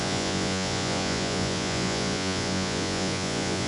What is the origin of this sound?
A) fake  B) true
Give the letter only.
A